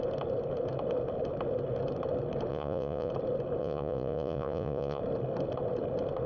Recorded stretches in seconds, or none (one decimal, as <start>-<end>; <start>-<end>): 0.0-2.5; 3.1-3.6; 5.0-6.3